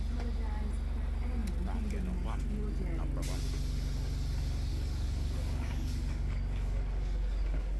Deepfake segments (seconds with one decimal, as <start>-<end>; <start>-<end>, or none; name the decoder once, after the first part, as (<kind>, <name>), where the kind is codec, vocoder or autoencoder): 4.7-7.8 (codec, DAC)